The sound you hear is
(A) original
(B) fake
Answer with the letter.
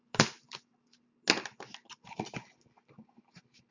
A